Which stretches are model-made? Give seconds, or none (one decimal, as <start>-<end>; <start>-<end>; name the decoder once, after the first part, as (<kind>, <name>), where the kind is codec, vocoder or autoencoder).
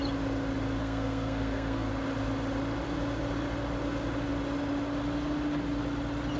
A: 0.8-1.9 (codec, SNAC)